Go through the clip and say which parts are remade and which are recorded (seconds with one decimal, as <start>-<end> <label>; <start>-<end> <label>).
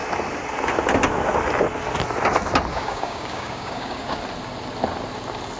0.0-2.7 recorded; 2.7-4.2 remade; 4.2-5.6 recorded